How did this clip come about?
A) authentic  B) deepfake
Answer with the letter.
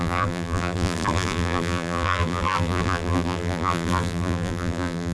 B